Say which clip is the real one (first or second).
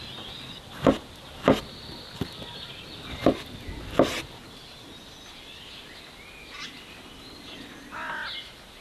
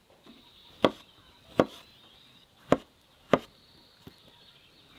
first